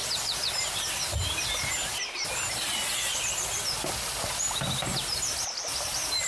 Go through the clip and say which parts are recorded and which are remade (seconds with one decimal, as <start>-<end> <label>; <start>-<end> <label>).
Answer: 0.0-6.3 recorded